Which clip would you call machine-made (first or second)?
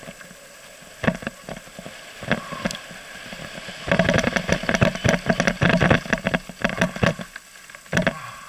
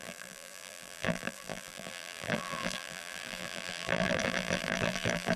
second